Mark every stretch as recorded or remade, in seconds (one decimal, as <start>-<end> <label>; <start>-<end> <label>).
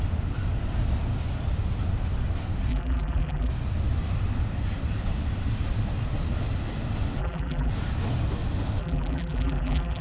0.0-2.7 recorded; 2.7-3.5 remade; 3.5-7.2 recorded; 7.2-7.7 remade; 7.7-8.8 recorded; 8.8-10.0 remade